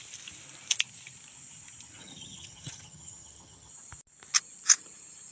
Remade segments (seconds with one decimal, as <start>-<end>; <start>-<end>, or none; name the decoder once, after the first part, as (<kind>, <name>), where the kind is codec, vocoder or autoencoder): 2.0-3.7 (vocoder, HiFi-GAN)